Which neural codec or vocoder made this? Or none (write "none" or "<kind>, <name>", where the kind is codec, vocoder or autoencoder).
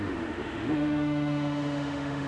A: autoencoder, DAC-VAE